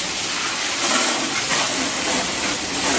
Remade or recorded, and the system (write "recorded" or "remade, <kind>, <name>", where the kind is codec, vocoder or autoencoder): recorded